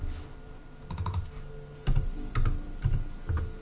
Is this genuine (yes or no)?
yes